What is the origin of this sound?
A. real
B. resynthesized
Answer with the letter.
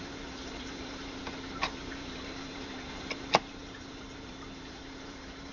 B